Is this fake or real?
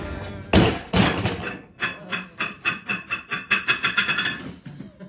real